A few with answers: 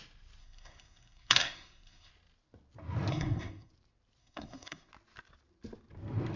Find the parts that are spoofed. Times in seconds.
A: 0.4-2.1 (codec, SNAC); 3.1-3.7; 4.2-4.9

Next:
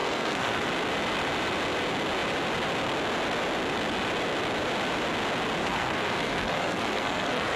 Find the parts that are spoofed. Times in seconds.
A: 0.0-0.7 (codec, SNAC); 5.6-7.6

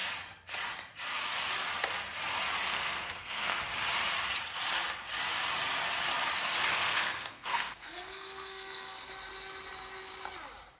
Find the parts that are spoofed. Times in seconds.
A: 2.7-3.6 (codec, SNAC); 6.7-9.1

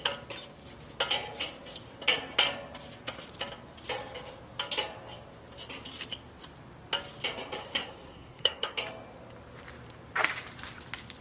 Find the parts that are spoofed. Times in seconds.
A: 7.6-8.8 (codec, SNAC)

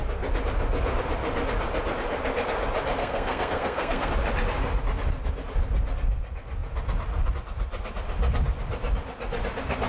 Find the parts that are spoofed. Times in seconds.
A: 3.0-4.1 (codec, SNAC)

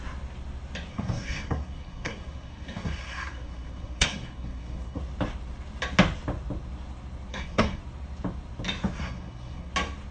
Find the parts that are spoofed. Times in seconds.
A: 0.9-5.0 (codec, SNAC); 7.3-7.8; 9.0-9.7

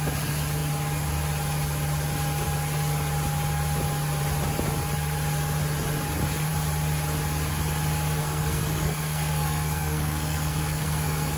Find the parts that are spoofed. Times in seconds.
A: 8.2-11.4 (codec, SNAC)

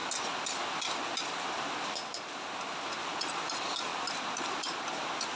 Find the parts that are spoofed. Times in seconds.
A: none